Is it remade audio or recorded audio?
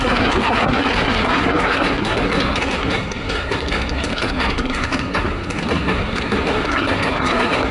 remade